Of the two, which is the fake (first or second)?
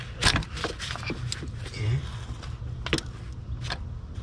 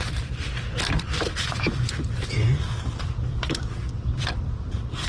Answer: second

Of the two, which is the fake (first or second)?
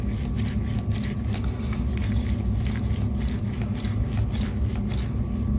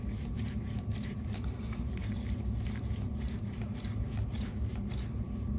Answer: second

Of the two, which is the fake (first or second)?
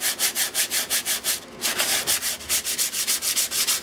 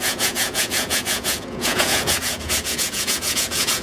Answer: second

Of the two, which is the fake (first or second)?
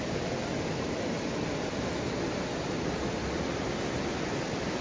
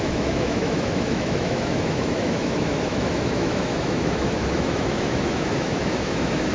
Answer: second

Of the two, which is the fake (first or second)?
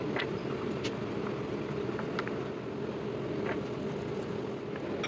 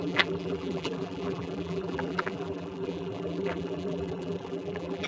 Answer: second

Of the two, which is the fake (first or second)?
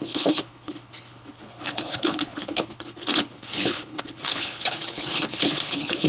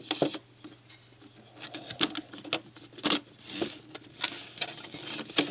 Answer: first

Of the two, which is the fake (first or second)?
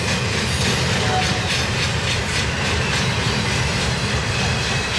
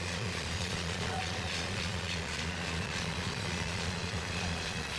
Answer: second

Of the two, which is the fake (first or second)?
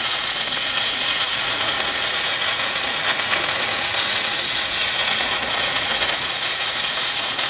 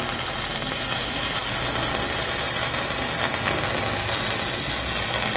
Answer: first